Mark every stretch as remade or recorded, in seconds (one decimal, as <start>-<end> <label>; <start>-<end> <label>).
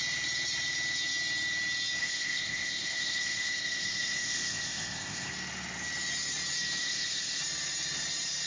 0.0-2.0 recorded; 2.0-5.3 remade; 5.3-6.8 recorded; 6.8-7.4 remade; 7.4-8.5 recorded